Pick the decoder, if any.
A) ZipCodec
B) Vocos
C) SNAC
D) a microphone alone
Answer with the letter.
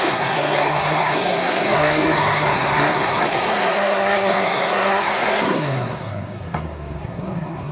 C